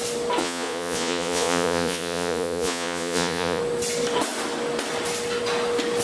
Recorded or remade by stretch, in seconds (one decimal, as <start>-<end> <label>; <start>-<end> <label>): 0.0-0.4 recorded; 0.4-3.6 remade; 3.6-6.0 recorded